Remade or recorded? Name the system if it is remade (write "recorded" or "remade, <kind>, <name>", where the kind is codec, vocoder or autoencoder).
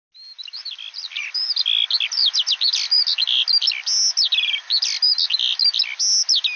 recorded